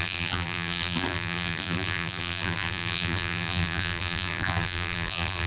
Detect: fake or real fake